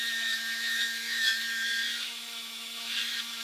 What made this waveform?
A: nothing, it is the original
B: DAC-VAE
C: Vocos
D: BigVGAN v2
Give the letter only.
B